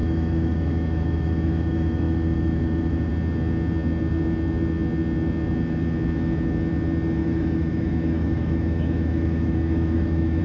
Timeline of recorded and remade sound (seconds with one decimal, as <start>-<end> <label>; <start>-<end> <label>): 0.0-3.1 remade; 3.1-7.2 recorded; 7.2-10.4 remade